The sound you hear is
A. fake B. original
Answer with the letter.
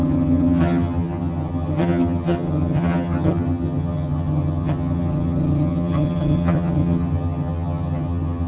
A